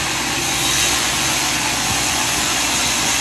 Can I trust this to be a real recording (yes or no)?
no